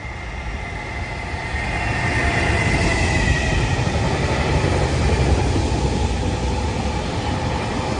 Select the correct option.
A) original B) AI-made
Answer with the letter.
A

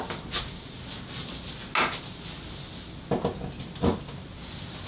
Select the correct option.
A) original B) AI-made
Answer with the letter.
A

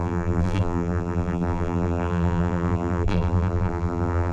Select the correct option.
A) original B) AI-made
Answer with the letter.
B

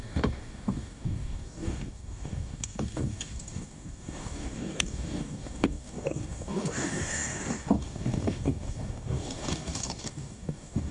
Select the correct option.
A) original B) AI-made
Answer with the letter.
B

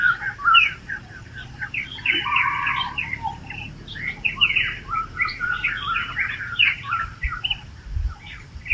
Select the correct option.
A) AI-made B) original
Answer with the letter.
A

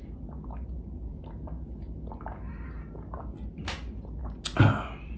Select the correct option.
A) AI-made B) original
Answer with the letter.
B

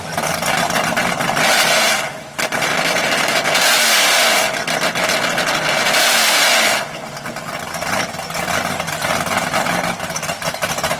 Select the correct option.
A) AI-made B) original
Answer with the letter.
B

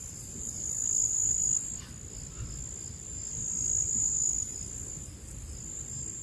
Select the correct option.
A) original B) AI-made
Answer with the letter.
A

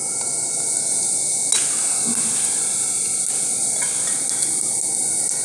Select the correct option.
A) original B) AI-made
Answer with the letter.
A